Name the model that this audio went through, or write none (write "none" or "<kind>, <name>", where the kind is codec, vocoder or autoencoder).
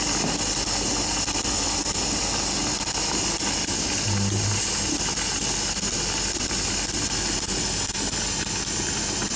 none